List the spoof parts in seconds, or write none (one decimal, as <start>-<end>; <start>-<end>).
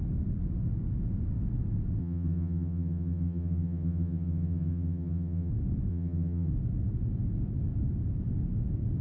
2.0-5.5; 5.9-6.5